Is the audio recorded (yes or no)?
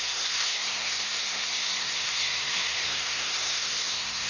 no